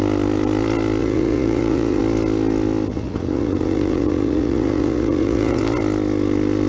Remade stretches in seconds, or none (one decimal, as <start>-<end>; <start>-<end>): 1.0-2.0; 2.9-5.6